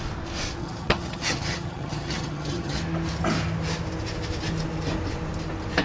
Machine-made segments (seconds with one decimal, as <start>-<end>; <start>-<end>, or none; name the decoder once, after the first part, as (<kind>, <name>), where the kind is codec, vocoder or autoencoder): 0.6-2.8 (vocoder, HiFi-GAN)

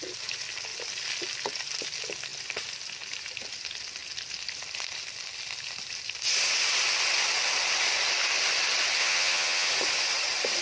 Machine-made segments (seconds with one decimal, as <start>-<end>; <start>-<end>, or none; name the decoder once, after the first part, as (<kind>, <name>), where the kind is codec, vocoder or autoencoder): 9.0-9.7 (vocoder, HiFi-GAN)

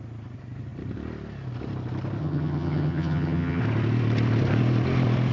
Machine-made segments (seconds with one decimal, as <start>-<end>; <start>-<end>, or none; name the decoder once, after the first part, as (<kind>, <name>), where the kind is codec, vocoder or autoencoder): 2.2-3.6 (vocoder, HiFi-GAN)

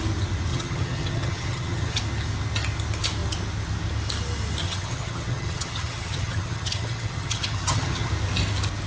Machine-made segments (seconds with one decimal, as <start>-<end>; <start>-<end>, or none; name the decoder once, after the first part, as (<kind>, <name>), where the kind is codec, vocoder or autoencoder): 0.5-2.0 (vocoder, HiFi-GAN); 4.6-8.1

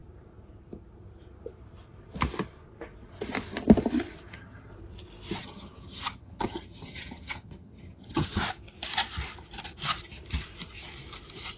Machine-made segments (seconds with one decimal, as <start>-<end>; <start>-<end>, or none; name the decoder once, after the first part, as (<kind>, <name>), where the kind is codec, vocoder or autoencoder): 4.3-4.7 (vocoder, HiFi-GAN); 5.4-8.4

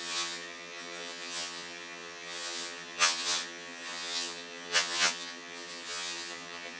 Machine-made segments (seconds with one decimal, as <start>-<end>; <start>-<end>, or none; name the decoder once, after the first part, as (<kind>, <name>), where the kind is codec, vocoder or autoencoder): 0.0-6.8 (vocoder, HiFi-GAN)

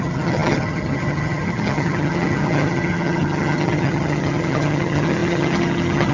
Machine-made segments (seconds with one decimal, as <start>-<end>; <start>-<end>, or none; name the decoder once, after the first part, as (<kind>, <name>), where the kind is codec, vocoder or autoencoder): 0.0-6.1 (vocoder, HiFi-GAN)